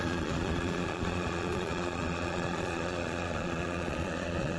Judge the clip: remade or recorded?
remade